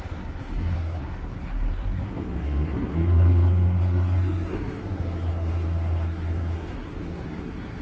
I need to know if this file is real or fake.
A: fake